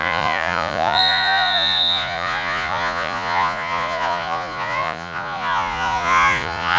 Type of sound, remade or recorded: remade